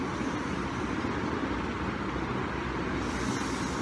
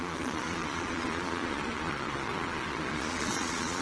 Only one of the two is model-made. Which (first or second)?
second